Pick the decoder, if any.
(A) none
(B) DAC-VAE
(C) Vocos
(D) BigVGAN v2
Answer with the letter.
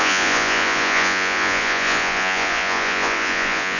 C